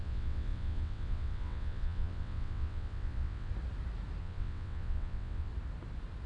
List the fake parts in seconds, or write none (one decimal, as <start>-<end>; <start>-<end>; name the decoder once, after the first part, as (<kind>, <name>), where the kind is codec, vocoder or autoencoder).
0.0-3.5 (vocoder, WaveNeXt); 4.2-5.5